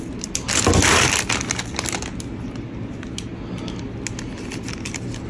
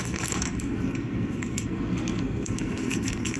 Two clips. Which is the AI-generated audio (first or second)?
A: second